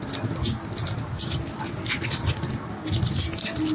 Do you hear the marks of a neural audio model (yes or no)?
no